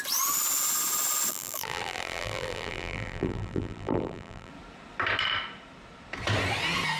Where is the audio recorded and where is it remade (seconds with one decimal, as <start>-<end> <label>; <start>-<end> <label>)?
0.0-1.3 recorded; 1.3-4.5 remade; 4.5-7.0 recorded